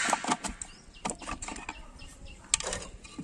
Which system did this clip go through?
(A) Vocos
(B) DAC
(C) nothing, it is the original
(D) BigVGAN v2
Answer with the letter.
C